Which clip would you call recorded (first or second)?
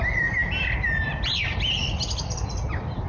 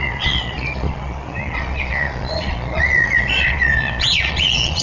first